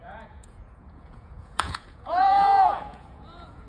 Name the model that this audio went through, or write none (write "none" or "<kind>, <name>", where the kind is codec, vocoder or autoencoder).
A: vocoder, Vocos